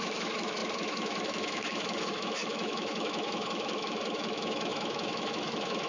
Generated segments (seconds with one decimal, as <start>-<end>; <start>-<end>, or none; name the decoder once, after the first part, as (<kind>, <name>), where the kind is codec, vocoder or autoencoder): 0.0-5.9 (autoencoder, DAC-VAE)